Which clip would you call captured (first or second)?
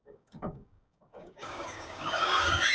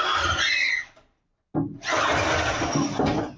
second